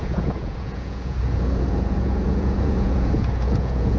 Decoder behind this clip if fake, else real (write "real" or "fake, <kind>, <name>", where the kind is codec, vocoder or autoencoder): fake, vocoder, Vocos